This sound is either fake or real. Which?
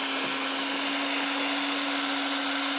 real